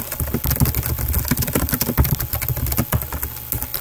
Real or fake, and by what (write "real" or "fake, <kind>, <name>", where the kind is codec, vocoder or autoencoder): real